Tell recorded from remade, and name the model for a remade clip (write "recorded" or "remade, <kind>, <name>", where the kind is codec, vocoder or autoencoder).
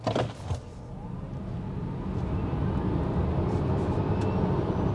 recorded